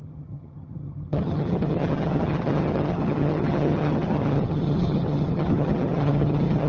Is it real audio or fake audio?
fake